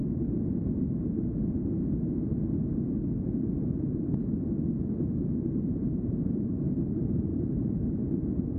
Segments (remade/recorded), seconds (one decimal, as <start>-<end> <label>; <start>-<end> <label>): 0.0-3.8 recorded; 3.8-4.2 remade; 4.2-5.2 recorded; 5.2-8.6 remade